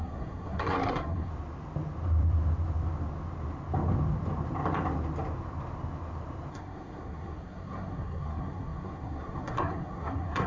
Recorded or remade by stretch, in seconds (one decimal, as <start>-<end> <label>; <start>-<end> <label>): 0.0-1.3 remade; 1.3-6.5 recorded; 6.5-10.5 remade